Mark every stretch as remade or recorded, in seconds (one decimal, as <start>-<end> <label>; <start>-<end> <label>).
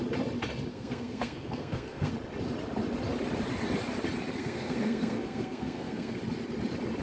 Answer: 0.0-0.7 recorded; 0.7-2.1 remade; 2.1-4.4 recorded; 4.4-6.2 remade; 6.2-7.0 recorded